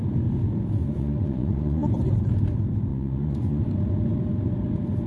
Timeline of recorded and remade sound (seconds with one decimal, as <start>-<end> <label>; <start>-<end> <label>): 0.0-0.8 recorded; 0.8-2.0 remade; 2.0-2.9 recorded; 2.9-3.6 remade; 3.6-5.1 recorded